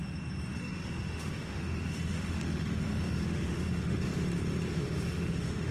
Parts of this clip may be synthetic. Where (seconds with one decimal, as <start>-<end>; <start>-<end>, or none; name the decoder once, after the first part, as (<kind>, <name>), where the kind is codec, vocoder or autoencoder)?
0.6-4.0 (autoencoder, DAC-VAE); 4.7-5.7